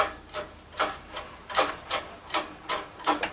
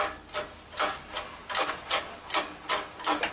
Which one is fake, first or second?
first